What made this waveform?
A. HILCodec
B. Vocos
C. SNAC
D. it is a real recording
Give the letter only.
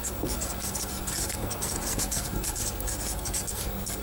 C